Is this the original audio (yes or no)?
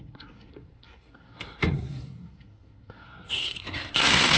no